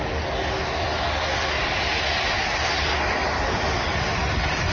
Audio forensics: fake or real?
real